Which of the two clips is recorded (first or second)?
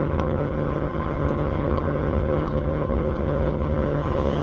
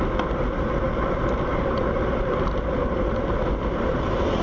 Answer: second